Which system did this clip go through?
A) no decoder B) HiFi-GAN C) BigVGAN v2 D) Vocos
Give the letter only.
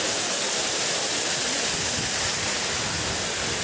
A